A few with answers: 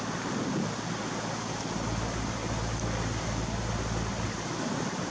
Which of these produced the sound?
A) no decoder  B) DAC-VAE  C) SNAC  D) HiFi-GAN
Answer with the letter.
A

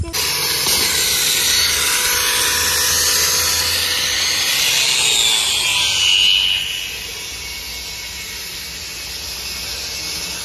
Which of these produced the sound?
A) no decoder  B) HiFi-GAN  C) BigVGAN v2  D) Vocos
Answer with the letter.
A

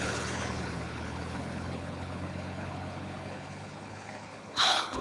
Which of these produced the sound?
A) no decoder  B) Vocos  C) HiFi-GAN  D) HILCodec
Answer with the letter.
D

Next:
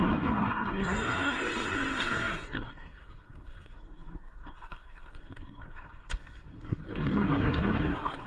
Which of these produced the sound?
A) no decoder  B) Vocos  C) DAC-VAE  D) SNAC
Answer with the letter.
D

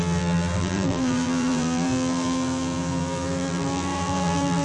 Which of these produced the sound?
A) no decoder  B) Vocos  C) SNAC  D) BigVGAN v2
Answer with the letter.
D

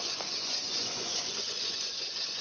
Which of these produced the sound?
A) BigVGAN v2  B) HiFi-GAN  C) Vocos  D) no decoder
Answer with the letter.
C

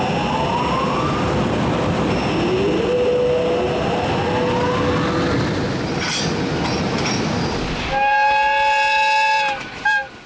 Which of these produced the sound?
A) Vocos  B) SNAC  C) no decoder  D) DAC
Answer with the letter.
C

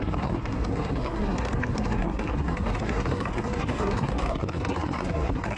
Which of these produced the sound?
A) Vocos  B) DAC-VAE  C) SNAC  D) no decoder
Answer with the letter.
C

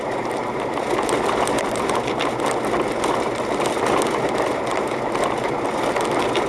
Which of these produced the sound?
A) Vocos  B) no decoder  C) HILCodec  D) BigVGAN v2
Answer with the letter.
B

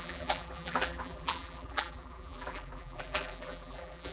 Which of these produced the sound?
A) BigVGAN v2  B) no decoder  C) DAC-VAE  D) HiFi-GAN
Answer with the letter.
A